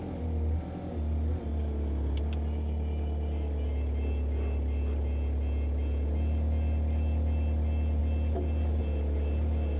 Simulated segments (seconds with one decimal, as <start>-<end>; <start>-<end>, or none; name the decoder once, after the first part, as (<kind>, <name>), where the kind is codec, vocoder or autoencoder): none